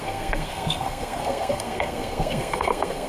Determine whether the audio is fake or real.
fake